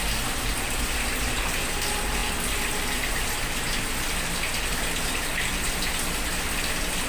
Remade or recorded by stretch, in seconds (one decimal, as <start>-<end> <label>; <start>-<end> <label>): 0.0-7.1 recorded